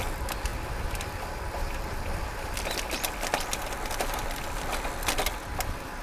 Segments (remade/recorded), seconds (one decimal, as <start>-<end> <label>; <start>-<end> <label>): 0.0-6.0 recorded